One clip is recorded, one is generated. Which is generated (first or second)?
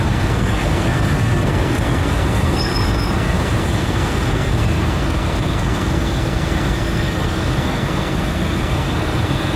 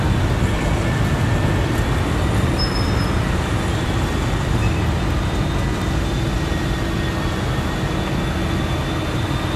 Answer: first